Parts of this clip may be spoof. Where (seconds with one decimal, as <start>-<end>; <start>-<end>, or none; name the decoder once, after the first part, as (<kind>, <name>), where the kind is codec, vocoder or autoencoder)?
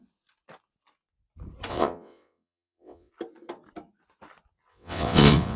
1.7-3.1 (vocoder, WaveNeXt); 4.7-5.6